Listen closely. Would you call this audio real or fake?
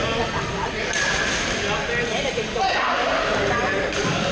real